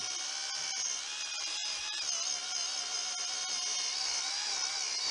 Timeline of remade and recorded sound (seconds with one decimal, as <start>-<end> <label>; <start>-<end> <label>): 0.0-5.1 recorded